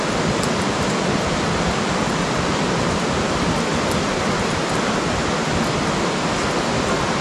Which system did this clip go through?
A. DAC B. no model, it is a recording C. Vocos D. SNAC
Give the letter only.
B